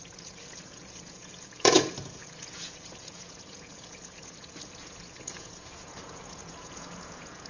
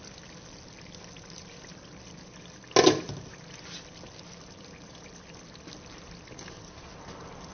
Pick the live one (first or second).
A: second